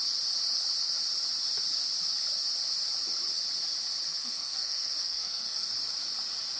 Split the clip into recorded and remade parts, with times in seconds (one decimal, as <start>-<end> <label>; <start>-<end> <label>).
0.0-4.2 recorded; 4.2-5.7 remade; 5.7-6.6 recorded